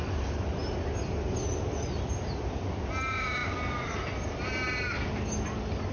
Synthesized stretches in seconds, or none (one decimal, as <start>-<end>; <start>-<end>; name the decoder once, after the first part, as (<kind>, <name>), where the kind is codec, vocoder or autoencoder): none